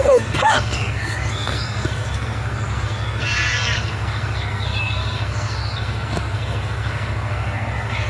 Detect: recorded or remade remade